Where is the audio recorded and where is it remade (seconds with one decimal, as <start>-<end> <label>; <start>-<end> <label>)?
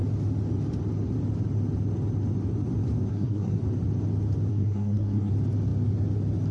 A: 0.0-3.1 recorded; 3.1-3.6 remade; 3.6-4.5 recorded; 4.5-5.3 remade; 5.3-6.5 recorded